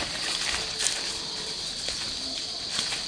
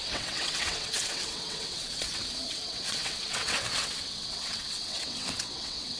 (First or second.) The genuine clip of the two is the first